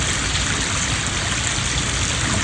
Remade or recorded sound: recorded